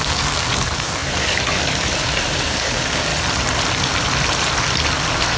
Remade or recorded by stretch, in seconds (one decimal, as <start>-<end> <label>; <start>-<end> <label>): 0.0-3.1 remade; 3.1-5.4 recorded